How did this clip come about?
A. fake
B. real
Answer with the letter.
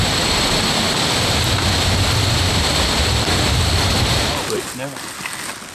B